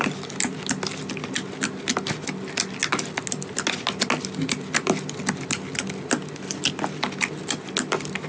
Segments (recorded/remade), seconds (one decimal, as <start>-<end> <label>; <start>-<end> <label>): 0.0-8.3 recorded